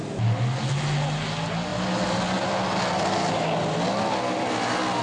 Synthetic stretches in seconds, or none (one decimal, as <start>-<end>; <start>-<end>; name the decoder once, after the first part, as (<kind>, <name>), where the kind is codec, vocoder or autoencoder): none